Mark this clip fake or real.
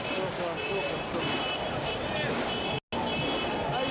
real